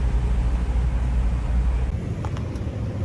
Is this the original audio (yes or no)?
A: yes